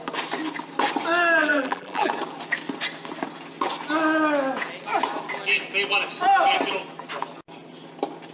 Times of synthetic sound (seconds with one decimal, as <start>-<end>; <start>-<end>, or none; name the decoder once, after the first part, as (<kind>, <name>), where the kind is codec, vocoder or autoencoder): 1.4-2.1 (vocoder, BigVGAN v2)